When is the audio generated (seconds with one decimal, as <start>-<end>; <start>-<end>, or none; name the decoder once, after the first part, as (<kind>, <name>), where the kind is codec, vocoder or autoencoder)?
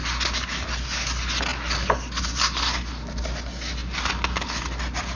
none